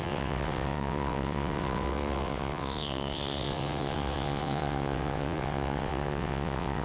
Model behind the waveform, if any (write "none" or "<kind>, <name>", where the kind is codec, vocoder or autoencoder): vocoder, WaveNeXt